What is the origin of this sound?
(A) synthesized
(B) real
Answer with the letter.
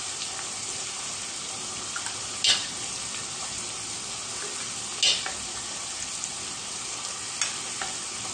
B